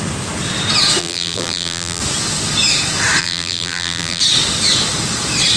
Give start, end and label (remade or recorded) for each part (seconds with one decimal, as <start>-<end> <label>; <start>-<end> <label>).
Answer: 0.0-1.0 recorded; 1.0-2.0 remade; 2.0-3.2 recorded; 3.2-4.2 remade; 4.2-5.6 recorded